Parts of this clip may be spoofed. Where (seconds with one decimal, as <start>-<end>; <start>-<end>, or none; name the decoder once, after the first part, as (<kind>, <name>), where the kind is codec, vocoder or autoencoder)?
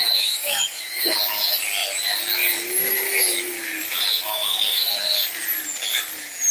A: 0.0-1.1 (autoencoder, DAC-VAE); 4.1-4.9